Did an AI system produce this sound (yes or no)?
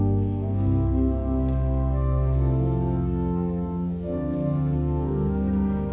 yes